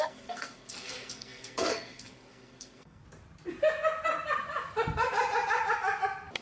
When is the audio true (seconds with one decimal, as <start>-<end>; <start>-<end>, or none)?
3.0-6.4